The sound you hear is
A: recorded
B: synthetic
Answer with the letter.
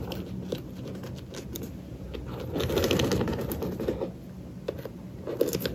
A